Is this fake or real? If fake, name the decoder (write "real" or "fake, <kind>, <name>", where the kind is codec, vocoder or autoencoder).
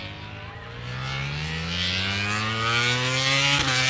real